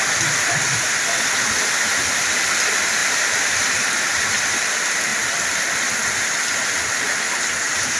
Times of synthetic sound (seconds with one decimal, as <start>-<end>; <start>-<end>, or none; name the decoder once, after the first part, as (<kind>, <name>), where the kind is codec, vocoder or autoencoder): 3.0-3.7 (vocoder, BigVGAN v2)

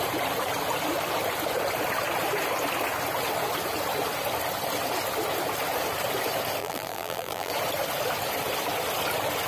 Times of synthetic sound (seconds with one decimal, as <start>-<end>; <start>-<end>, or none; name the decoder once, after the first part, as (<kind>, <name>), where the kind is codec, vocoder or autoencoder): 6.6-7.5 (vocoder, BigVGAN v2)

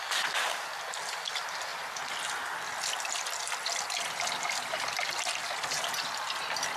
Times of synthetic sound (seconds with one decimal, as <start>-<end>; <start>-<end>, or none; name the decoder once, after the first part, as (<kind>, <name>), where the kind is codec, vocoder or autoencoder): none

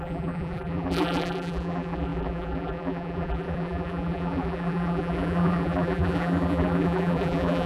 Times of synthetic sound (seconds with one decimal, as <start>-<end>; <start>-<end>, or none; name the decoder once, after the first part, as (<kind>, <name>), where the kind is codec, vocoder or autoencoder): 0.0-7.7 (vocoder, BigVGAN v2)

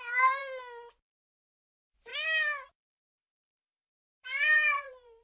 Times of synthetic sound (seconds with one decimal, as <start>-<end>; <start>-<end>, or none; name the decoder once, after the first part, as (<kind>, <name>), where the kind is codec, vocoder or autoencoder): 0.0-0.4 (vocoder, BigVGAN v2); 1.5-2.1; 4.2-5.2